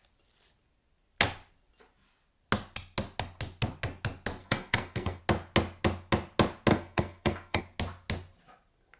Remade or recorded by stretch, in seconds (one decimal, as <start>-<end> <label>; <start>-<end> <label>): 0.0-4.4 recorded; 4.4-5.2 remade; 5.2-6.7 recorded; 6.7-7.6 remade; 7.6-9.0 recorded